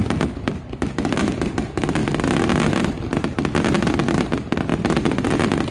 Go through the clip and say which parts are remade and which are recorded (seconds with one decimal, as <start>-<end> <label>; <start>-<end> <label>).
0.0-4.7 recorded; 4.7-5.2 remade; 5.2-5.7 recorded